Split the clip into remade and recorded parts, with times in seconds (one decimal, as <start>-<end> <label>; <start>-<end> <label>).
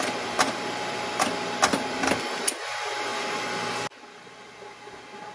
0.0-5.3 recorded